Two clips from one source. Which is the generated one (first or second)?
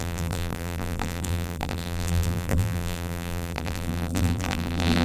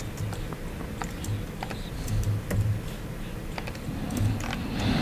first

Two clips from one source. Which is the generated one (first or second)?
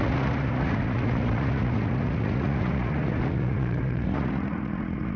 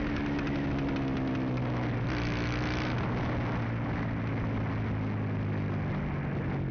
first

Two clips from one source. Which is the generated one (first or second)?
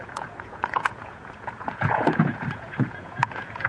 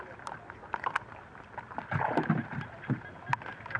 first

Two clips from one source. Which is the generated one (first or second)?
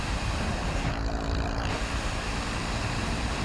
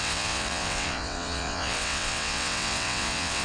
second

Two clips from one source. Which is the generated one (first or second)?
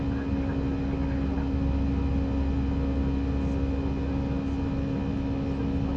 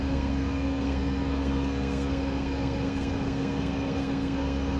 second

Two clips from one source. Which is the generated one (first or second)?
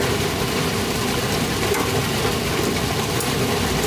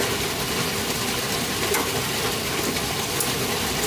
first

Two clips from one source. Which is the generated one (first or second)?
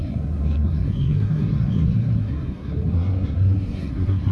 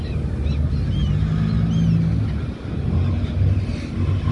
first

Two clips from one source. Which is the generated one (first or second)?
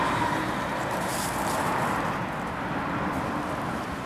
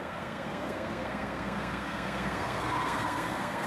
second